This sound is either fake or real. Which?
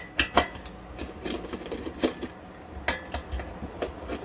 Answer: real